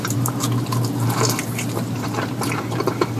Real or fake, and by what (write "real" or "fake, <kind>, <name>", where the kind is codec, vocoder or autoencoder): fake, vocoder, BigVGAN v2